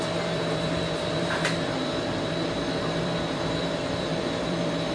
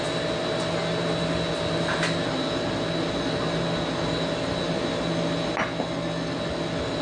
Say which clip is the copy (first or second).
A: first